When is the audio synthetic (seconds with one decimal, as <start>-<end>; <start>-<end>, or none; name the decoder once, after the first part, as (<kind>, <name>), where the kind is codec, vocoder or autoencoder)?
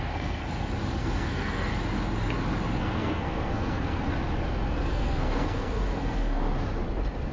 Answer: 0.0-0.4 (codec, SNAC); 1.0-1.7; 2.8-4.1; 4.9-6.4